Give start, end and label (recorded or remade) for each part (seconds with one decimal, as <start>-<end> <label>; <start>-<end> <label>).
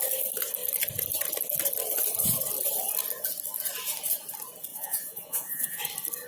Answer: 0.0-4.7 recorded; 4.7-5.8 remade; 5.8-6.3 recorded